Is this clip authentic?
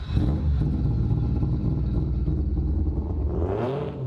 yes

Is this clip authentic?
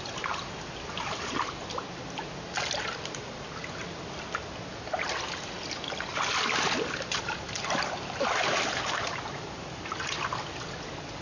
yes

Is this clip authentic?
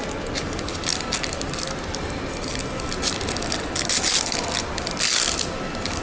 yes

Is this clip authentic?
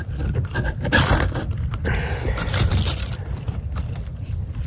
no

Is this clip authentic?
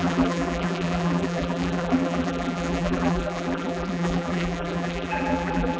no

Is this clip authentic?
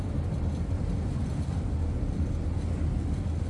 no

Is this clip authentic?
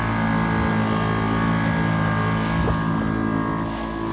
yes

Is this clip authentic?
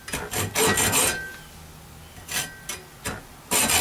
yes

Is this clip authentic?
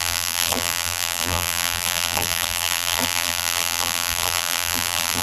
no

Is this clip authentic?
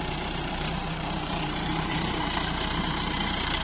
no